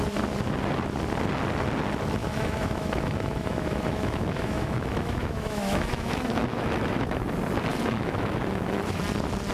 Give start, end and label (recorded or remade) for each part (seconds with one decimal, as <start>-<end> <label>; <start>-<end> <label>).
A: 0.0-2.2 recorded; 2.2-7.2 remade; 7.2-7.7 recorded; 7.7-9.0 remade; 9.0-9.5 recorded